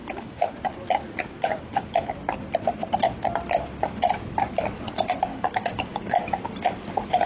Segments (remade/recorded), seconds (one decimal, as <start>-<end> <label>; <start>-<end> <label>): 0.0-0.5 remade; 0.5-5.3 recorded; 5.3-6.3 remade; 6.3-7.3 recorded